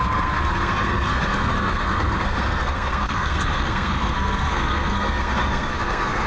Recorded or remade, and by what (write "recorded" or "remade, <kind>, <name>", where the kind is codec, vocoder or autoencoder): remade, codec, SNAC